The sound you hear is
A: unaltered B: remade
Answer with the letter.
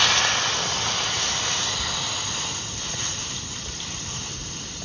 A